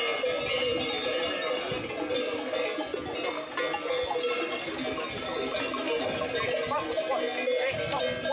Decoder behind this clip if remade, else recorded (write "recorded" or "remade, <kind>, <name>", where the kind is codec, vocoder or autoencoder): recorded